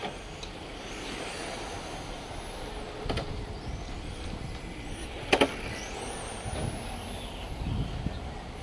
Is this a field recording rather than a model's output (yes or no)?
yes